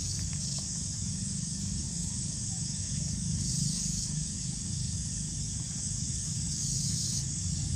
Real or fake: fake